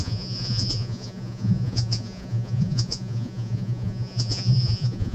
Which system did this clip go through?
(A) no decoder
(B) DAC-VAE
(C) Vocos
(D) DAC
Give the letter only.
C